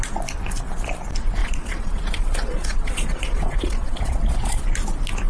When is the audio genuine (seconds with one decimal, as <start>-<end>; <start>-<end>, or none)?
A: 0.0-1.4; 4.6-5.3